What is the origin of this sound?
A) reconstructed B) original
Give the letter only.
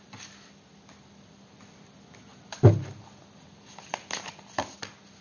B